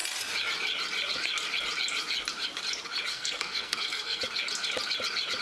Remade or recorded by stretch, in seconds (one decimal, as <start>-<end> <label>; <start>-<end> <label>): 0.0-3.1 recorded; 3.1-4.2 remade; 4.2-5.4 recorded